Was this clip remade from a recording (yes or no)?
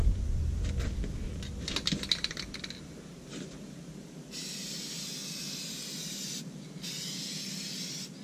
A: no